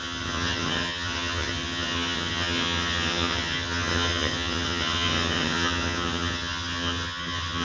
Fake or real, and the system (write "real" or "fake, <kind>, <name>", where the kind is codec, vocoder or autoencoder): fake, vocoder, HiFi-GAN